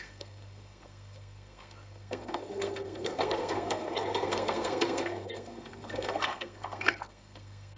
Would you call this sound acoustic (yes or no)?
no